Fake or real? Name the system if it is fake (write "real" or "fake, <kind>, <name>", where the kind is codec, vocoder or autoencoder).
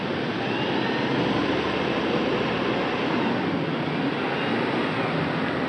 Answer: real